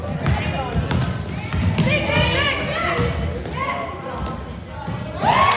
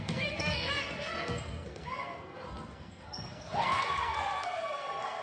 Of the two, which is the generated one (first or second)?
second